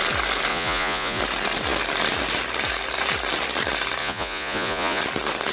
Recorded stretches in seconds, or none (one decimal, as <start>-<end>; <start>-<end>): 0.0-0.5; 1.2-4.0; 5.0-5.5

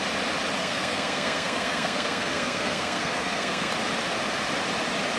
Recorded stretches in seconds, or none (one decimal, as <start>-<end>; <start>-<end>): 0.0-0.6; 3.7-5.2

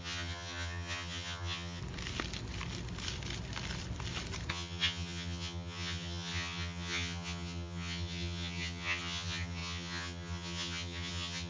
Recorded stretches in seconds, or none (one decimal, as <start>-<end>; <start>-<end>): 1.8-4.5

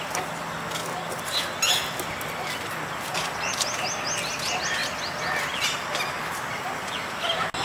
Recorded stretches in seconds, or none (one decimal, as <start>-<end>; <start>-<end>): 0.0-7.6

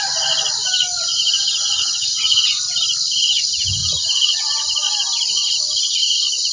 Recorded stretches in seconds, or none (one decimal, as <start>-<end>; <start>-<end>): 0.0-1.1; 2.5-3.8; 4.4-6.5